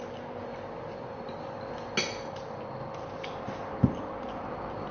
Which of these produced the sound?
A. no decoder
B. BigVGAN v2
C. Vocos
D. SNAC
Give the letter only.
A